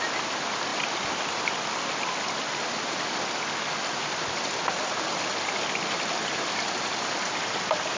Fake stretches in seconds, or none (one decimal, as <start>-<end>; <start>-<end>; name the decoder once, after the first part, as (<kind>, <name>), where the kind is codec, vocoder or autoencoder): none